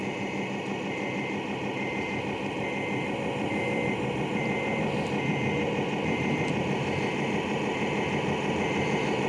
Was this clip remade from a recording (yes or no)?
no